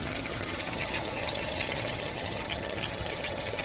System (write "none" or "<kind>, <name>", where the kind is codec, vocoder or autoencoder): vocoder, HiFi-GAN